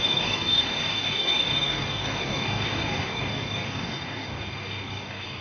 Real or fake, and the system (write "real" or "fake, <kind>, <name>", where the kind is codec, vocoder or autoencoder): fake, codec, DAC